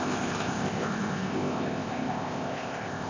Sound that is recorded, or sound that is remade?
remade